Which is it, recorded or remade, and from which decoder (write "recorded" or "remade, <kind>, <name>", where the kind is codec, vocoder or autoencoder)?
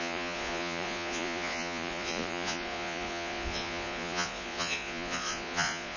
remade, vocoder, Vocos